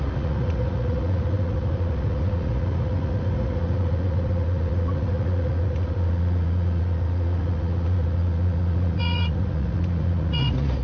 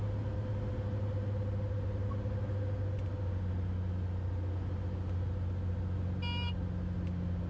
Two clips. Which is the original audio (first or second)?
second